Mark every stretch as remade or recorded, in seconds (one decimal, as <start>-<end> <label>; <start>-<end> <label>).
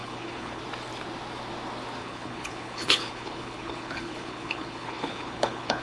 0.0-0.6 remade; 0.6-2.0 recorded; 2.0-5.8 remade